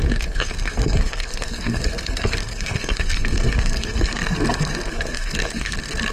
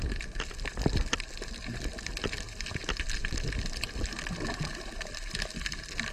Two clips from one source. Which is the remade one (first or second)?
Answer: first